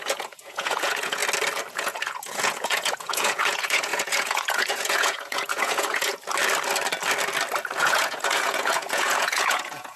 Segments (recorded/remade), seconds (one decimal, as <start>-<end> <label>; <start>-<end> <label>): 0.0-1.2 remade; 1.2-1.7 recorded; 1.7-6.1 remade; 6.1-7.8 recorded; 7.8-10.0 remade